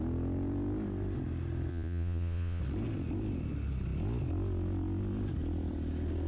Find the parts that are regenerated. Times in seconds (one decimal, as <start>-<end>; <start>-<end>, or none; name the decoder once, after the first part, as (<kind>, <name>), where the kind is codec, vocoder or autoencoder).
1.7-2.6 (vocoder, Vocos)